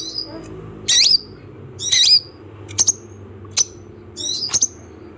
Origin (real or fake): real